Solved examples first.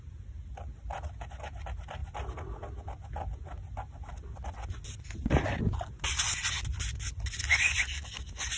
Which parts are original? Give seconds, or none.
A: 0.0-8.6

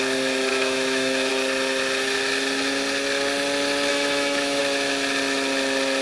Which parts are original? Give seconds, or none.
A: 0.0-0.5; 1.3-3.9; 4.6-6.0

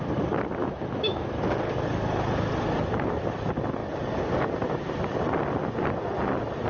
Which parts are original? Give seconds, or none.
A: 0.0-0.6; 1.4-6.7

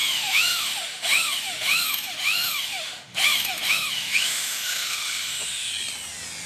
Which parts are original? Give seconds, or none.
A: 5.7-6.5

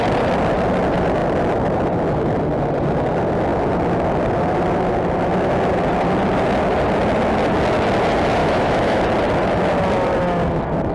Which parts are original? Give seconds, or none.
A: 0.0-8.4; 9.0-10.9

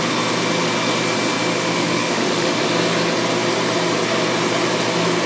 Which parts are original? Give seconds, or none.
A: 0.0-1.5; 2.7-5.3

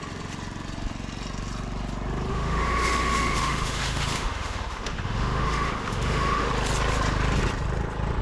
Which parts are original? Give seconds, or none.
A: 0.0-2.3; 6.5-8.2

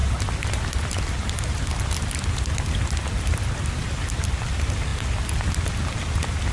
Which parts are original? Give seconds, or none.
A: 0.0-6.5